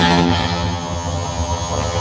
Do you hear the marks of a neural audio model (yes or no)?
yes